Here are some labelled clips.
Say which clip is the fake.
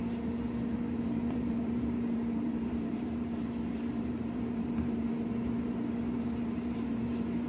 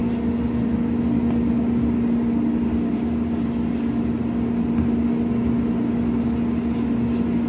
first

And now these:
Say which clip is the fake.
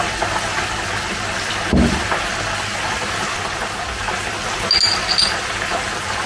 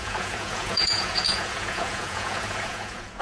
second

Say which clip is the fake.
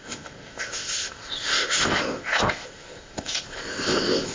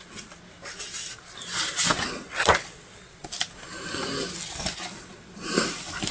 first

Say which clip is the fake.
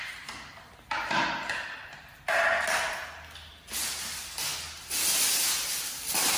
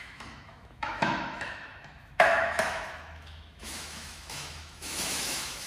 second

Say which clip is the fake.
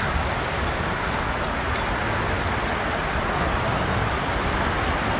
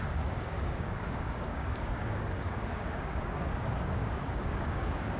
second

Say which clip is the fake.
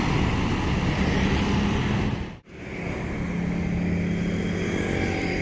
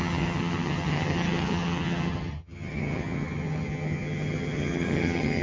second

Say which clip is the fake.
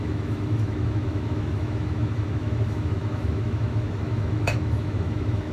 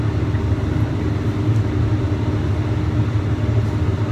first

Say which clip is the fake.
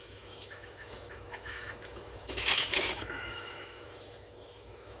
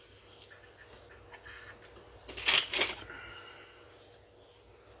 first